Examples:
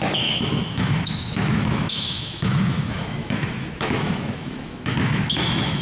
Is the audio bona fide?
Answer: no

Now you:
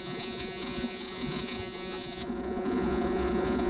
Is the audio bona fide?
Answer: no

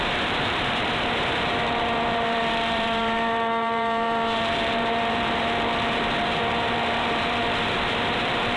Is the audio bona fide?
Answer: no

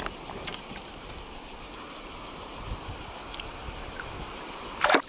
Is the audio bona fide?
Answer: yes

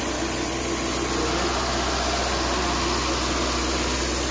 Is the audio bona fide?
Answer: yes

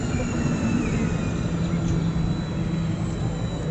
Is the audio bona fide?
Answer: yes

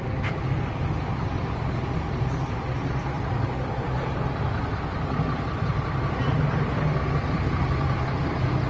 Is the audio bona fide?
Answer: no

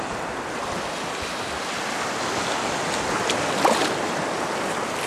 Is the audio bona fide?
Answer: yes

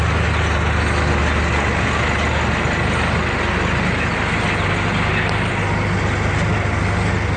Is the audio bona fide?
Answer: yes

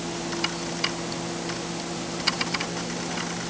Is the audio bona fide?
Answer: yes